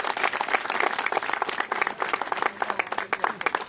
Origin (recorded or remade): recorded